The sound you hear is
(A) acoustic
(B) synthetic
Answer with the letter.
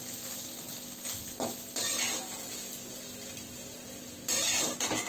A